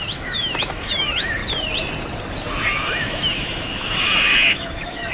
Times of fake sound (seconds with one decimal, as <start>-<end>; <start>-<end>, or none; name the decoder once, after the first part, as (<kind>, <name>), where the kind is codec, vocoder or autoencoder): 0.0-1.4 (autoencoder, DAC-VAE); 2.9-5.1